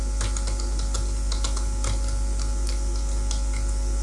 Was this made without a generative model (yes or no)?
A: yes